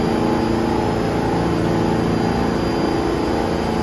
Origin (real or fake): real